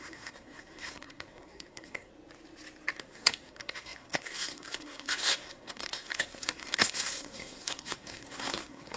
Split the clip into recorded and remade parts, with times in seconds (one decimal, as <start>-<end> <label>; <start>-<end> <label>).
0.0-2.1 remade; 2.1-3.0 recorded; 3.0-9.0 remade